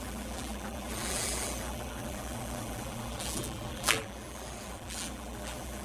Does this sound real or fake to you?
fake